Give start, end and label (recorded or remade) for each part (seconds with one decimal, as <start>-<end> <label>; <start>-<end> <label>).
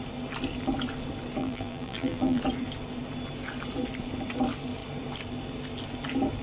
0.0-1.4 recorded; 1.4-2.4 remade; 2.4-6.4 recorded